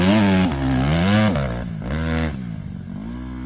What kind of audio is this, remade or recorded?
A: recorded